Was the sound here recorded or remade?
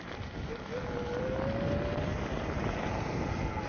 recorded